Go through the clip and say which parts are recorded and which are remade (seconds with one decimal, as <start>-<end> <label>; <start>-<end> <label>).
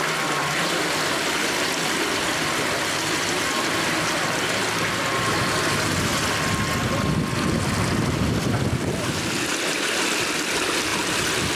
0.0-11.6 recorded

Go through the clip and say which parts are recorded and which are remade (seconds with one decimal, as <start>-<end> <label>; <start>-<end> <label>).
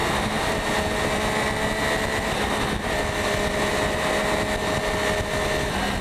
0.0-6.0 recorded